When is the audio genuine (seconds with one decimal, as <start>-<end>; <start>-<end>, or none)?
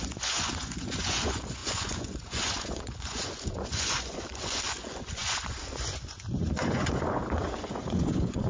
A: none